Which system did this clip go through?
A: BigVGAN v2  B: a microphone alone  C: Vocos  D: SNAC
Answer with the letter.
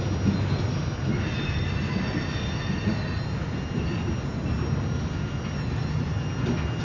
B